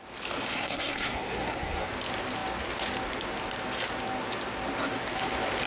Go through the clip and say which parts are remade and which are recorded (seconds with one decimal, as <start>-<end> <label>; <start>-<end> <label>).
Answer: 0.0-0.5 recorded; 0.5-1.9 remade; 1.9-5.7 recorded